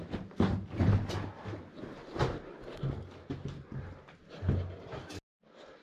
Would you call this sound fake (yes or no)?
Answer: no